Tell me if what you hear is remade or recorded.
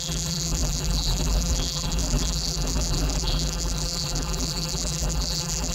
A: remade